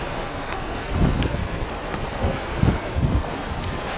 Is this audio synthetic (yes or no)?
yes